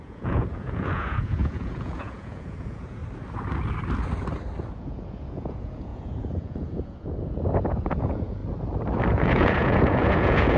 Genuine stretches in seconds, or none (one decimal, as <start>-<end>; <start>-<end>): 3.0-4.7; 8.4-9.1

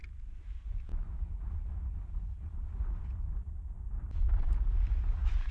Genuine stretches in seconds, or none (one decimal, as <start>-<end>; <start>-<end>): 0.0-5.5